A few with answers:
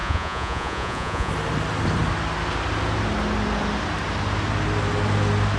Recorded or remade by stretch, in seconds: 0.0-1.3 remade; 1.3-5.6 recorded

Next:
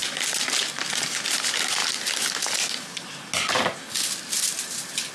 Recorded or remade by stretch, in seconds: 0.0-5.1 recorded

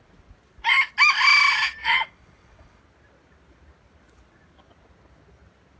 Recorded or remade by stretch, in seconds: 0.0-1.8 recorded; 1.8-2.8 remade; 2.8-5.8 recorded

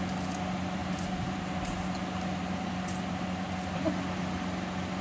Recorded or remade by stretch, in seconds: 0.0-0.8 recorded; 0.8-1.4 remade; 1.4-5.0 recorded